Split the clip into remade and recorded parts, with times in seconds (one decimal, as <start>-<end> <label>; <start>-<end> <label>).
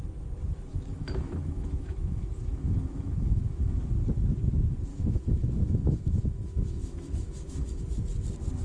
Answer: 0.0-0.7 recorded; 0.7-3.8 remade; 3.8-4.9 recorded; 4.9-7.8 remade; 7.8-8.6 recorded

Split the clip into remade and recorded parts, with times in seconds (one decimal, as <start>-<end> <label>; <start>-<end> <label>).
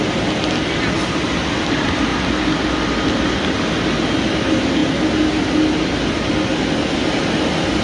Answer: 0.0-7.8 recorded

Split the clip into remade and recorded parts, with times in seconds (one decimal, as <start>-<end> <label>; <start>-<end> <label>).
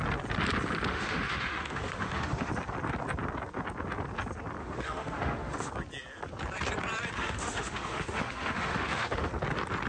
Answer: 0.0-0.9 recorded; 0.9-2.5 remade; 2.5-4.6 recorded; 4.6-5.7 remade; 5.7-7.2 recorded; 7.2-9.3 remade; 9.3-9.9 recorded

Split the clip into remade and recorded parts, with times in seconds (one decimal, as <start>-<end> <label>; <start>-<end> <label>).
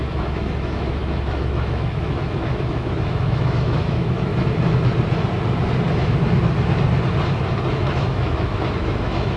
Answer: 0.0-4.3 remade; 4.3-7.7 recorded; 7.7-9.4 remade